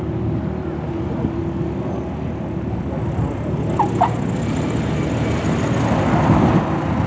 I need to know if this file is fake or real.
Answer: real